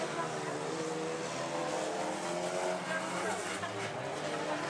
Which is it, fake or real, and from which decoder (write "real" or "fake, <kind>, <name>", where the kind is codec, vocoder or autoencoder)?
real